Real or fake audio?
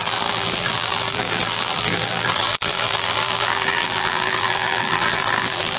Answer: fake